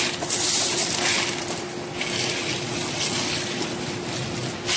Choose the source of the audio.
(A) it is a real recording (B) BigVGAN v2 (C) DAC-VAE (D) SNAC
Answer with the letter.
A